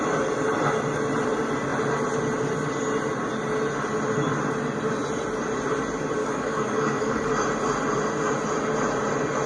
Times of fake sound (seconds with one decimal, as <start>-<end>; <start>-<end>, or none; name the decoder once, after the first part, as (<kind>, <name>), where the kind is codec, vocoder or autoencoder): 6.2-7.3 (codec, DAC)